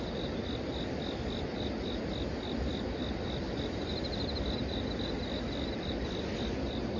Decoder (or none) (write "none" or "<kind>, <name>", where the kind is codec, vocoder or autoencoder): none